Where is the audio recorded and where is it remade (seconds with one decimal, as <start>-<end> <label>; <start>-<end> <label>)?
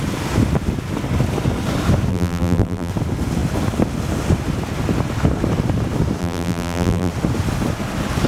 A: 0.0-2.1 recorded; 2.1-2.9 remade; 2.9-6.2 recorded; 6.2-7.1 remade; 7.1-8.3 recorded